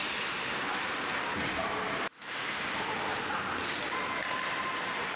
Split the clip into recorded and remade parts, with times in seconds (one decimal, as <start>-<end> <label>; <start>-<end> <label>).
0.0-5.2 recorded